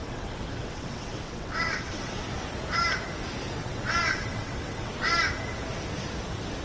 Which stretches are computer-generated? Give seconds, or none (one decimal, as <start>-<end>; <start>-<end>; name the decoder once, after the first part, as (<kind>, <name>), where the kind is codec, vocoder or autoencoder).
0.0-2.2 (vocoder, WaveNeXt); 3.6-4.9